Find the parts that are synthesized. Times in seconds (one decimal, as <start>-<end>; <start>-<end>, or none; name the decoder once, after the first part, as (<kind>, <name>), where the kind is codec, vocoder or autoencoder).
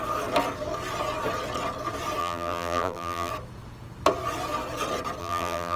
2.2-3.3 (vocoder, BigVGAN v2); 5.2-5.8